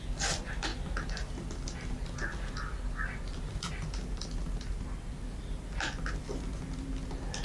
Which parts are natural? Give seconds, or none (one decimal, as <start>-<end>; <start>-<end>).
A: 0.0-7.4